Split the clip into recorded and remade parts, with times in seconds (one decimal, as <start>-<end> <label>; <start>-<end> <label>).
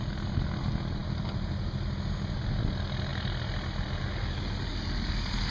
0.0-5.5 recorded